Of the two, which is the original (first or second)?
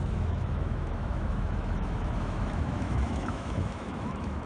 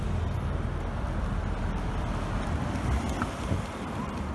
second